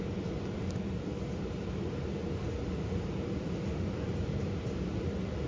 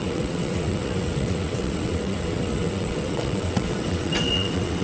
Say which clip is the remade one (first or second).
second